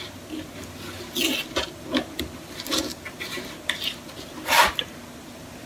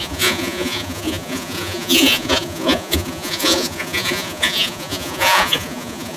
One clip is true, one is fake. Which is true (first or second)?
first